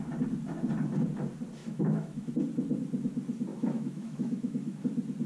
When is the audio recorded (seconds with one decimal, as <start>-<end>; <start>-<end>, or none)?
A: 0.0-1.6; 2.3-3.5; 4.8-5.3